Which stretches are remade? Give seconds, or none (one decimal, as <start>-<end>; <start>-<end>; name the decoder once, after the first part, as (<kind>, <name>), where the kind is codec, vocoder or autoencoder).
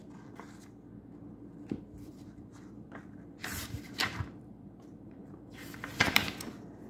2.1-6.2 (vocoder, BigVGAN v2)